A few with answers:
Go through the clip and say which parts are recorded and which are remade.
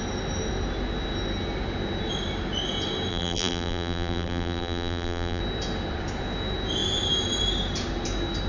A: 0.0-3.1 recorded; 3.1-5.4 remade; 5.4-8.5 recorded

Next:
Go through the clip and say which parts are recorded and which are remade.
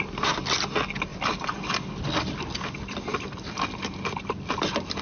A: 0.0-1.1 recorded; 1.1-1.7 remade; 1.7-3.1 recorded; 3.1-3.8 remade; 3.8-5.0 recorded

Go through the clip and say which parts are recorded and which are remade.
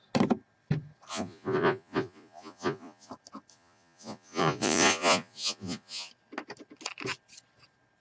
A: 0.0-1.1 recorded; 1.1-3.1 remade; 3.1-3.5 recorded; 3.5-6.1 remade; 6.1-8.0 recorded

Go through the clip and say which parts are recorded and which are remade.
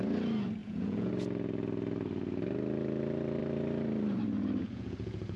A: 0.0-0.6 recorded; 0.6-1.1 remade; 1.1-4.6 recorded; 4.6-5.4 remade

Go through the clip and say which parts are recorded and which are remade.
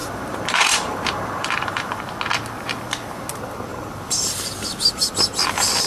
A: 0.0-2.0 remade; 2.0-3.7 recorded; 3.7-5.1 remade; 5.1-5.9 recorded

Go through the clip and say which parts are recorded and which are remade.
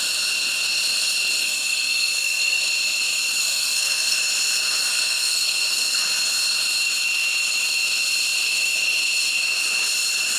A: 0.0-1.4 recorded; 1.4-2.6 remade; 2.6-3.4 recorded; 3.4-4.2 remade; 4.2-4.9 recorded; 4.9-6.0 remade; 6.0-10.4 recorded